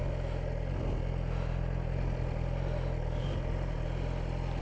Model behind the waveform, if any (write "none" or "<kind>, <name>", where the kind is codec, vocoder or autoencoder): none